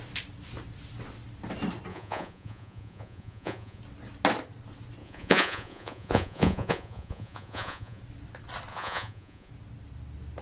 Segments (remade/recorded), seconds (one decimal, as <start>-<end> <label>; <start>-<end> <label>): 0.0-1.9 recorded; 1.9-3.8 remade; 3.8-5.0 recorded; 5.0-8.0 remade; 8.0-8.7 recorded; 8.7-9.5 remade; 9.5-10.4 recorded